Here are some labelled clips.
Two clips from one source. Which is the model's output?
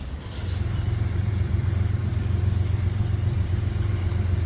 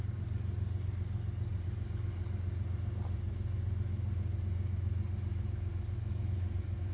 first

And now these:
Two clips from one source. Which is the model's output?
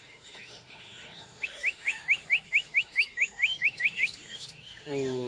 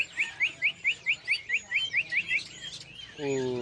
first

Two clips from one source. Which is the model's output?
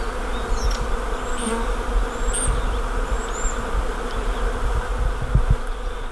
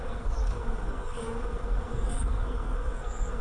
second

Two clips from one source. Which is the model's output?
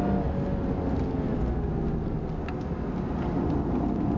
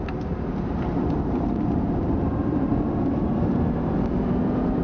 second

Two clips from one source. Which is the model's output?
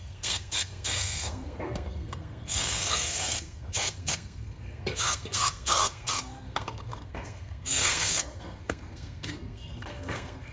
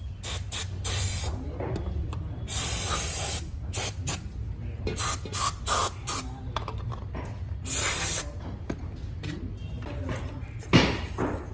first